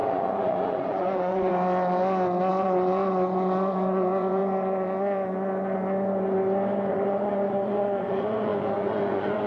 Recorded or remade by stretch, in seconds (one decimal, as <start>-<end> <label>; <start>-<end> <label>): 0.0-1.5 remade; 1.5-2.5 recorded; 2.5-4.4 remade; 4.4-6.9 recorded; 6.9-9.5 remade